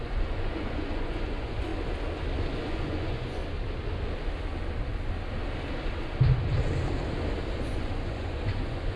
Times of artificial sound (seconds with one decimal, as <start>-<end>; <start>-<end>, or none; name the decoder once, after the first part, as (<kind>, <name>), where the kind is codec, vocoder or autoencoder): 0.0-1.7 (vocoder, Vocos); 2.6-3.4; 7.6-9.0